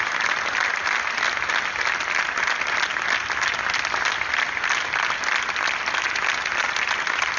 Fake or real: real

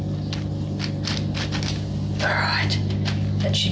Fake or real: real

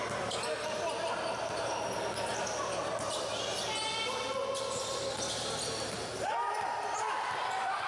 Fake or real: real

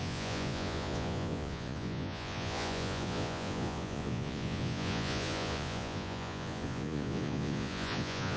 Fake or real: fake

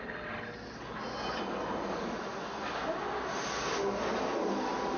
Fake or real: real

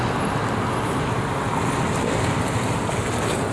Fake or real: real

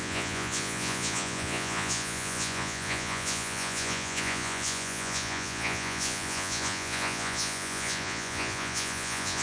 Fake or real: fake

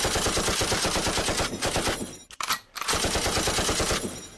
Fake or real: real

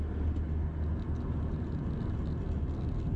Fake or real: real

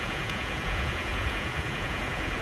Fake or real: fake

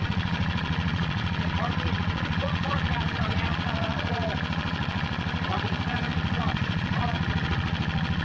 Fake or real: fake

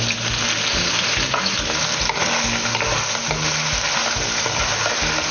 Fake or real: real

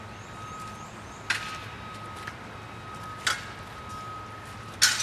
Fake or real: real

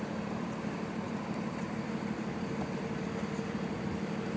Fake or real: real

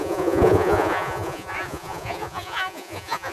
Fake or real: fake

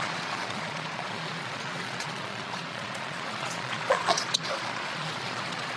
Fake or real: fake